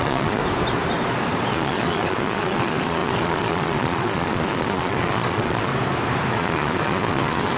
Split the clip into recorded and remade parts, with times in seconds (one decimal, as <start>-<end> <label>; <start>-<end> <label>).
0.0-0.4 remade; 0.4-1.5 recorded; 1.5-5.7 remade; 5.7-6.3 recorded; 6.3-7.6 remade